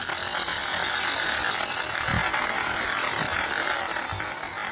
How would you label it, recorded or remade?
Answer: recorded